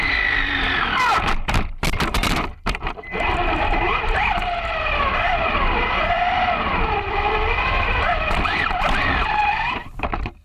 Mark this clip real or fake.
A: fake